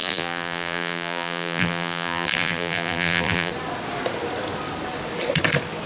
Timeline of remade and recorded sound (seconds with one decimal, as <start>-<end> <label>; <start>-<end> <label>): 0.0-3.5 remade; 3.5-5.9 recorded